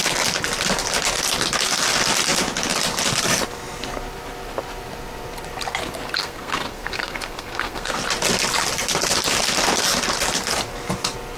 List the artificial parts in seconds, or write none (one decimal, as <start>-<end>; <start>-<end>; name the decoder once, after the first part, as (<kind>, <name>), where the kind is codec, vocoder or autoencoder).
6.2-8.0 (codec, SNAC)